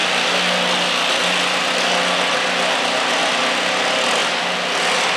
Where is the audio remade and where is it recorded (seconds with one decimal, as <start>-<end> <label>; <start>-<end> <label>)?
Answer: 0.0-5.2 recorded